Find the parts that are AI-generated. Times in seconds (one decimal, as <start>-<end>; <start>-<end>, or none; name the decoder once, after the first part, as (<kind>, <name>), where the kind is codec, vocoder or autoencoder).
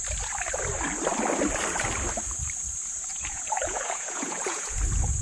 3.1-4.8 (vocoder, Vocos)